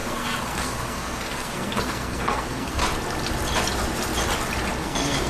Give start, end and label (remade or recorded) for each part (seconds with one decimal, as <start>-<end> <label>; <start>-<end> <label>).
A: 0.0-2.8 remade; 2.8-4.8 recorded; 4.8-5.3 remade